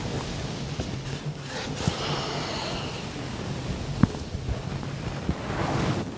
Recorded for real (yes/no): yes